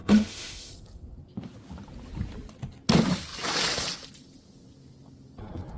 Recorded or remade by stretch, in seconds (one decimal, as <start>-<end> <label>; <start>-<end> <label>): 0.0-0.7 remade; 0.7-5.8 recorded